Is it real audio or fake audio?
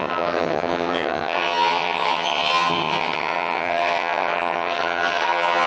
fake